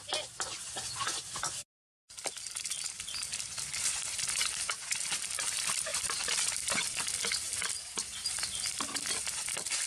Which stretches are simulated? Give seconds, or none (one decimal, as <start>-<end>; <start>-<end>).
5.9-9.9